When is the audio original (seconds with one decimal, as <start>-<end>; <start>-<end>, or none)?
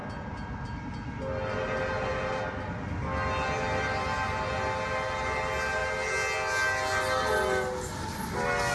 0.0-8.7